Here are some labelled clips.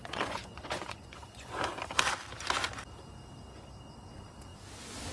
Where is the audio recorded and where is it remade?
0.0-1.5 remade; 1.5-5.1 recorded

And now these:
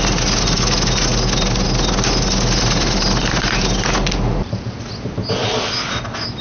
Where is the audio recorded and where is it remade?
0.0-6.4 recorded

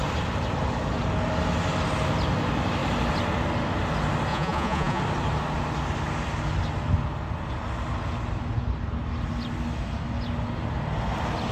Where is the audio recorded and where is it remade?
0.0-4.3 recorded; 4.3-5.0 remade; 5.0-11.5 recorded

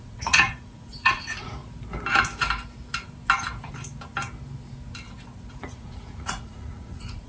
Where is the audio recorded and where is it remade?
0.0-1.6 remade; 1.6-5.5 recorded; 5.5-7.3 remade

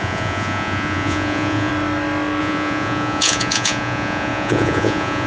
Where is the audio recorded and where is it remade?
0.0-1.7 remade; 1.7-2.4 recorded; 2.4-5.3 remade

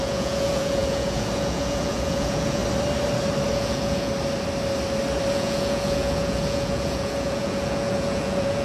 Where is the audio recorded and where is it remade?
0.0-2.6 remade; 2.6-3.5 recorded; 3.5-4.1 remade; 4.1-5.3 recorded; 5.3-8.6 remade

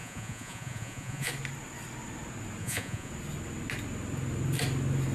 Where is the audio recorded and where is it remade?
0.0-1.3 remade; 1.3-2.6 recorded; 2.6-3.1 remade; 3.1-5.1 recorded